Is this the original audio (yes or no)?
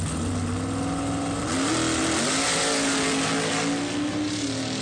yes